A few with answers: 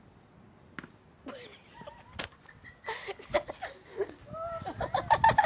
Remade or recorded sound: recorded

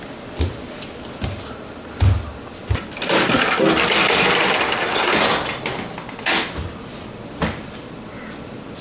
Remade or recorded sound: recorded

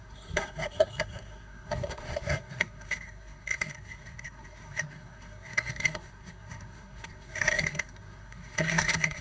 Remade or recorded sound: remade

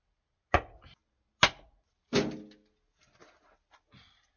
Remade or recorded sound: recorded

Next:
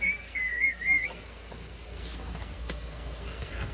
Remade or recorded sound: remade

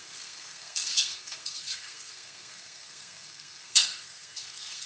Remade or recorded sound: remade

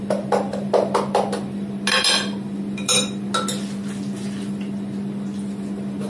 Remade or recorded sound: recorded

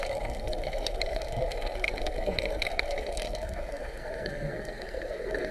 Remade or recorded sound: remade